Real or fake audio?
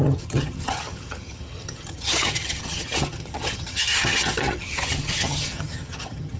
fake